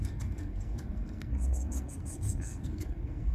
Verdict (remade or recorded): remade